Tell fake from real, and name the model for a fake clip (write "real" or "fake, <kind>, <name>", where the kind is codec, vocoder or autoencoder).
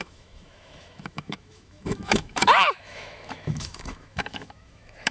fake, autoencoder, DAC-VAE